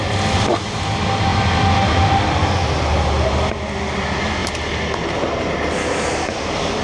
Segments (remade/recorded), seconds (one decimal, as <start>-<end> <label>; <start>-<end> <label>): 0.0-2.9 recorded; 2.9-3.5 remade; 3.5-6.8 recorded

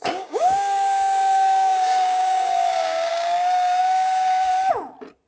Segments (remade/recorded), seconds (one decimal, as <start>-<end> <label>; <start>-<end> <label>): 0.0-4.5 remade; 4.5-5.3 recorded

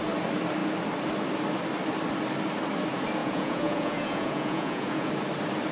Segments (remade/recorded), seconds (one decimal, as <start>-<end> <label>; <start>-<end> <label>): 0.0-3.2 recorded; 3.2-5.1 remade; 5.1-5.7 recorded

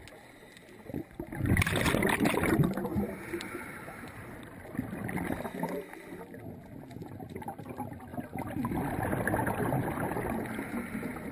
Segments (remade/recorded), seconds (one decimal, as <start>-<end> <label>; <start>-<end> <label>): 0.0-2.9 recorded; 2.9-3.8 remade; 3.8-8.1 recorded; 8.1-9.9 remade; 9.9-11.3 recorded

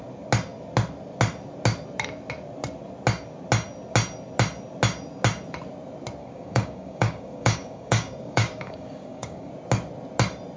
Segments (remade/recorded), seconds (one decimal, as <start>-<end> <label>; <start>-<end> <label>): 0.0-6.2 recorded; 6.2-9.5 remade; 9.5-10.6 recorded